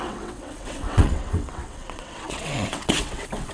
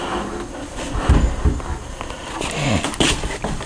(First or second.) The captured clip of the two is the second